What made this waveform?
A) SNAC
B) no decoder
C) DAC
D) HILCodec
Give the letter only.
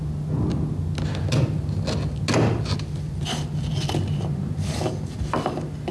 B